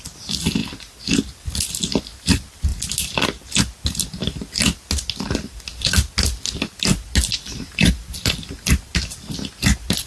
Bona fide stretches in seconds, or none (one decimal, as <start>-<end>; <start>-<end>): 0.0-10.1